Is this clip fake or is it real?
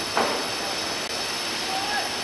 real